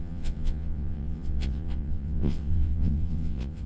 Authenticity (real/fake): fake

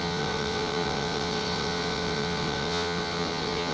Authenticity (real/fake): fake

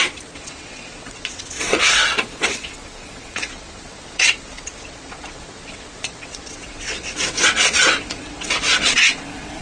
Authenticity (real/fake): fake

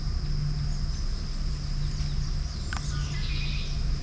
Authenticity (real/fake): real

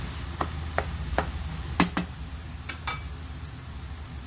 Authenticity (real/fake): real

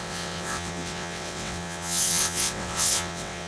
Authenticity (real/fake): fake